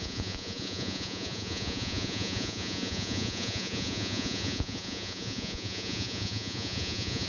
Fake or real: fake